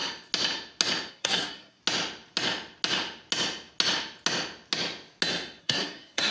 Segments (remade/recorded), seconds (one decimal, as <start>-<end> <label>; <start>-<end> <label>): 0.0-1.1 recorded; 1.1-1.8 remade; 1.8-5.6 recorded; 5.6-6.3 remade